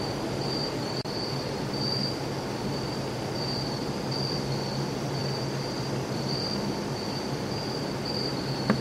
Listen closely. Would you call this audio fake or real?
fake